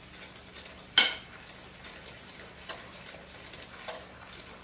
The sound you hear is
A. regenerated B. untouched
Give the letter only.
B